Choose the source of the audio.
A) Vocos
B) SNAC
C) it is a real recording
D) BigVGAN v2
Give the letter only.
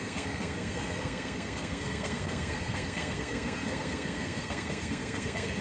B